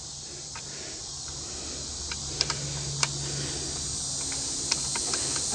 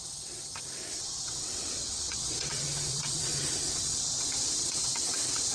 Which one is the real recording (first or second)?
first